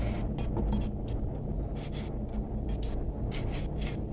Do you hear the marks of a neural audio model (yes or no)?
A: no